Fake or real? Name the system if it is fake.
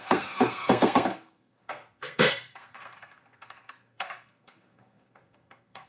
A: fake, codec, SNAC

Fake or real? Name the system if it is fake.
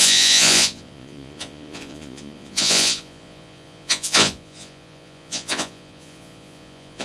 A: fake, vocoder, Vocos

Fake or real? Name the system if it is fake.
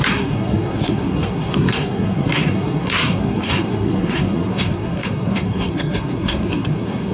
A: fake, codec, SNAC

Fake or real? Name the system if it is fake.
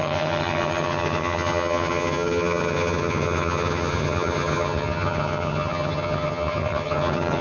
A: fake, vocoder, HiFi-GAN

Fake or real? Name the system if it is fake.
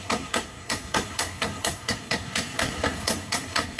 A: fake, codec, SNAC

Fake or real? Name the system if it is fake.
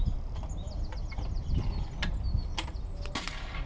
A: real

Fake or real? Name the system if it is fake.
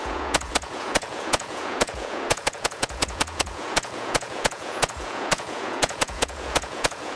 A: fake, vocoder, Vocos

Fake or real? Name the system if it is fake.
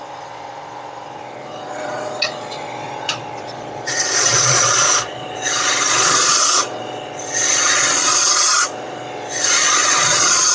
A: fake, vocoder, Vocos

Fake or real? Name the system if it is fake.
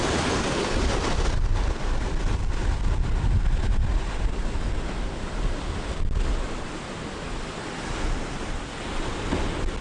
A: real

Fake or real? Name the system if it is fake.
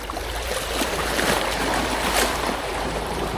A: fake, vocoder, BigVGAN v2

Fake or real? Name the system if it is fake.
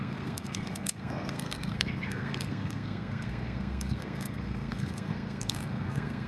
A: fake, codec, SNAC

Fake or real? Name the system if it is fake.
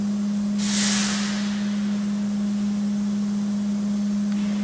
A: real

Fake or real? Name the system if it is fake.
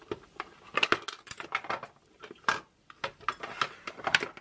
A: real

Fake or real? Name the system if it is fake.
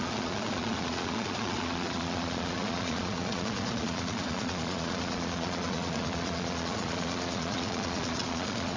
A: fake, vocoder, Vocos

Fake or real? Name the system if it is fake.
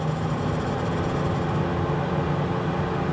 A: real